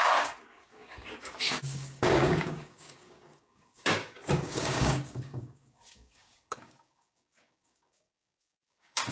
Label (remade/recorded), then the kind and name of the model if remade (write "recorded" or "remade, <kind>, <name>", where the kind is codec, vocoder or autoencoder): remade, codec, DAC